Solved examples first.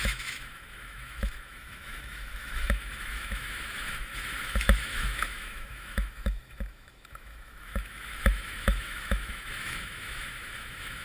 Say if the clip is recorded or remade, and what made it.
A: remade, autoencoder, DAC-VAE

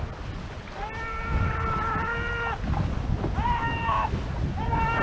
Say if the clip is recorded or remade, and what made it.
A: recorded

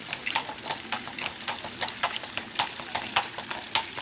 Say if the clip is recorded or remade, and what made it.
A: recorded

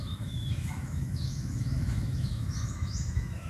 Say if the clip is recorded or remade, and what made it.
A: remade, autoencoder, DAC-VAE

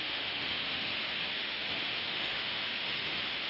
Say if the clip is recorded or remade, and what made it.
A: remade, autoencoder, DAC-VAE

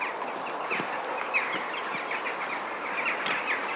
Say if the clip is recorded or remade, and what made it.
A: recorded